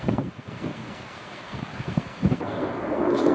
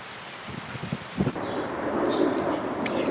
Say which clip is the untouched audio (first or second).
second